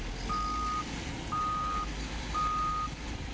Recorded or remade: recorded